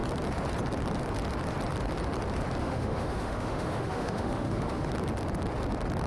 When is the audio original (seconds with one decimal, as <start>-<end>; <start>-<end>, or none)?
0.0-2.6; 4.9-6.1